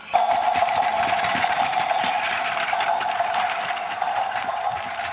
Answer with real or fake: real